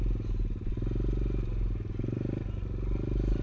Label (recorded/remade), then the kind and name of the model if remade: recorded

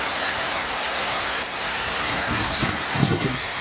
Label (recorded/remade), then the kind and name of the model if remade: remade, codec, SNAC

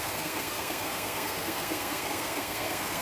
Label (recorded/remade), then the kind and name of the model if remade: remade, codec, SNAC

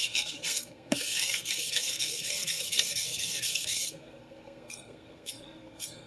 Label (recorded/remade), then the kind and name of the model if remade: remade, codec, SNAC